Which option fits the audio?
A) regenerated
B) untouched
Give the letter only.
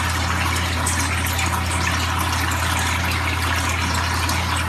B